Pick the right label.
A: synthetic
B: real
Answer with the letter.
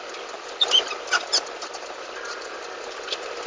B